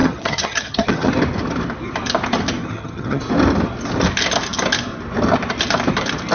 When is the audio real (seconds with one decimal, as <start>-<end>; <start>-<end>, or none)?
1.1-2.6; 3.2-6.3